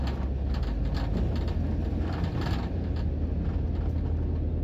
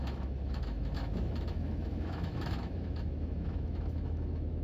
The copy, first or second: second